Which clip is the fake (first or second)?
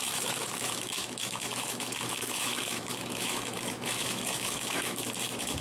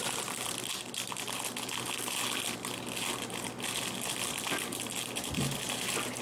first